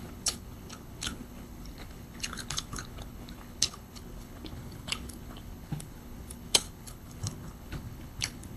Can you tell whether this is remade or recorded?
remade